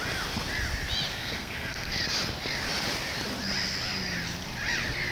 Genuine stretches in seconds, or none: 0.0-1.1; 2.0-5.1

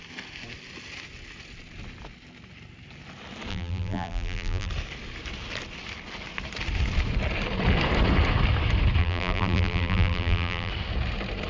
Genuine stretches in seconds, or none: 0.0-3.5; 4.7-9.0; 10.7-11.5

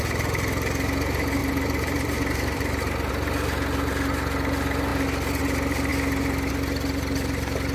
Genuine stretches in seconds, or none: 0.0-1.4; 3.1-7.7

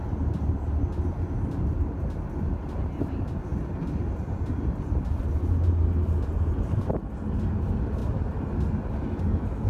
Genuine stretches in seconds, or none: 0.0-9.7

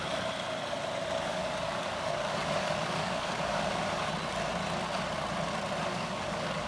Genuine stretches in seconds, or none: 0.0-1.3; 4.1-5.9

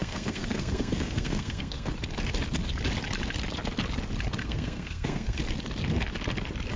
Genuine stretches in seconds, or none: 1.9-4.4; 5.4-6.8